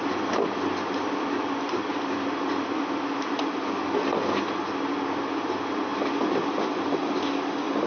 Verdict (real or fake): real